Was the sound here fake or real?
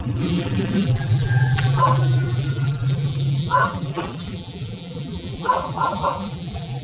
fake